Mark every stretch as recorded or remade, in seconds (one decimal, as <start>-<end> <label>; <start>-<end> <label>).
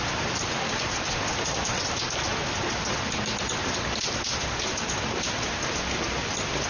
0.0-6.7 recorded